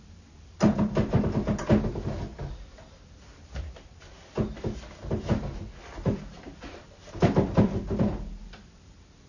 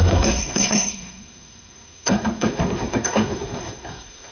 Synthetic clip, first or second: second